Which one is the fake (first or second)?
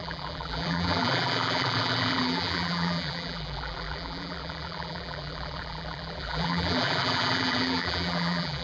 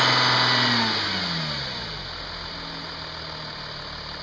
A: first